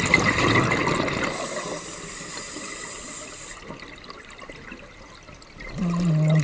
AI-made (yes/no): no